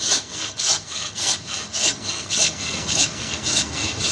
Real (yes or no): no